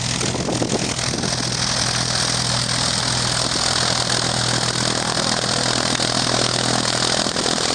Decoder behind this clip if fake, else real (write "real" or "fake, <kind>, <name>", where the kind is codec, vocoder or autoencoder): real